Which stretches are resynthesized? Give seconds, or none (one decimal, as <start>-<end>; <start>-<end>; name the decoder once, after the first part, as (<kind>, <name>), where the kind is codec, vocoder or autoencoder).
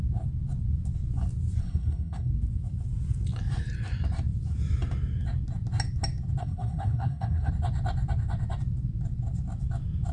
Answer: 1.6-2.3 (codec, SNAC); 6.4-7.5